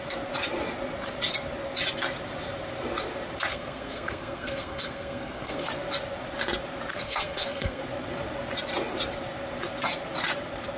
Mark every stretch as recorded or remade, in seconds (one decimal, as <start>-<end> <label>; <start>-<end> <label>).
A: 0.0-3.5 recorded; 3.5-5.7 remade; 5.7-6.9 recorded; 6.9-7.8 remade; 7.8-10.8 recorded